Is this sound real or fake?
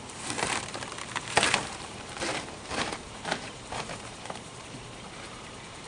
fake